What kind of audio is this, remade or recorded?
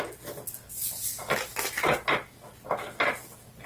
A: recorded